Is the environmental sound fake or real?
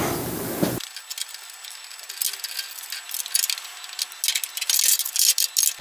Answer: real